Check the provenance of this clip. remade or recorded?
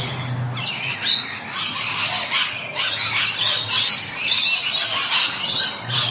recorded